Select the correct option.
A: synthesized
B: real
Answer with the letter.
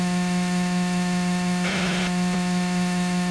A